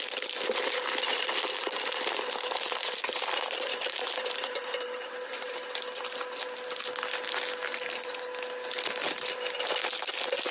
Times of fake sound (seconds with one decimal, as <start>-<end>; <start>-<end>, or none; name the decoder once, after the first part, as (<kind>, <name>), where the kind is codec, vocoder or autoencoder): 1.1-5.6 (vocoder, BigVGAN v2)